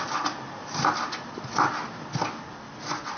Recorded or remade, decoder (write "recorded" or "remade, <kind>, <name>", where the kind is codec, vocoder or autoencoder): recorded